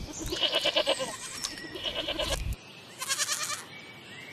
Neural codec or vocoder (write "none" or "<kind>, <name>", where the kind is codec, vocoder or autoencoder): none